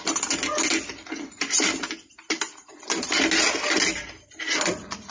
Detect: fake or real real